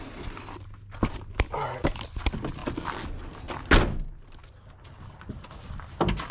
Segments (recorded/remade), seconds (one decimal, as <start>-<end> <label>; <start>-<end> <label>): 0.0-6.3 recorded